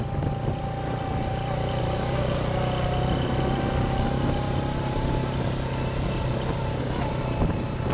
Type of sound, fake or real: real